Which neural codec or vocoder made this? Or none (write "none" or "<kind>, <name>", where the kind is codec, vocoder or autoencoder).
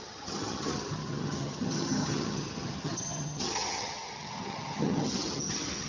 vocoder, HiFi-GAN